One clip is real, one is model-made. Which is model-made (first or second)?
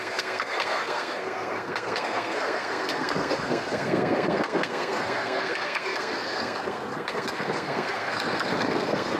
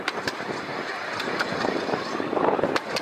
first